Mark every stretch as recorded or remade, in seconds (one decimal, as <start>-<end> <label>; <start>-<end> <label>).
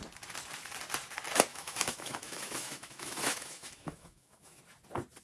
0.0-1.5 recorded; 1.5-4.6 remade; 4.6-5.2 recorded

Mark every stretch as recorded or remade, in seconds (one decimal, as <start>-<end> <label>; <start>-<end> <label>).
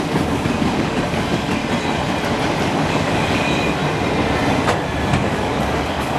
0.0-1.6 remade; 1.6-2.7 recorded; 2.7-3.8 remade; 3.8-5.2 recorded; 5.2-6.2 remade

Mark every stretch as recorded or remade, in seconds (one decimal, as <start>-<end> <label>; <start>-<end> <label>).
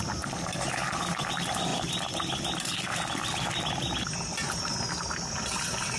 0.0-6.0 recorded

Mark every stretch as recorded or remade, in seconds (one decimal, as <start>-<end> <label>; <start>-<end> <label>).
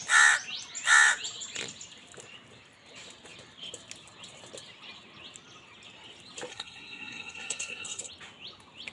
0.0-6.5 recorded; 6.5-8.1 remade; 8.1-8.9 recorded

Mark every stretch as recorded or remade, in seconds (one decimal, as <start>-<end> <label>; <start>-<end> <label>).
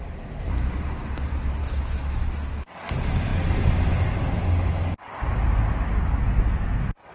0.0-1.6 recorded; 1.6-2.3 remade; 2.3-7.1 recorded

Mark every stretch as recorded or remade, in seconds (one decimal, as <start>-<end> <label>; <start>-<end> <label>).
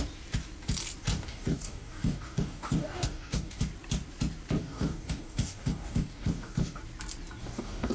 0.0-1.1 recorded; 1.1-3.6 remade; 3.6-4.6 recorded; 4.6-6.8 remade; 6.8-7.4 recorded; 7.4-7.9 remade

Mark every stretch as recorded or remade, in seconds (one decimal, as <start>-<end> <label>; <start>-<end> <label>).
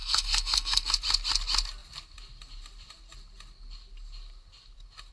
0.0-0.9 remade; 0.9-5.1 recorded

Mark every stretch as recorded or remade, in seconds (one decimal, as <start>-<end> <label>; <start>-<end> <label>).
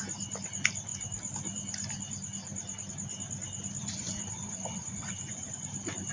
0.0-3.8 recorded; 3.8-5.5 remade; 5.5-6.1 recorded